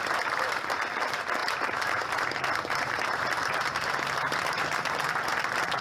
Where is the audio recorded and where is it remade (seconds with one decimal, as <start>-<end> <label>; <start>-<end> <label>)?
0.0-1.4 recorded; 1.4-4.9 remade; 4.9-5.8 recorded